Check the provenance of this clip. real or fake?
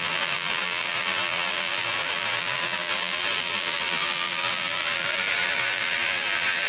fake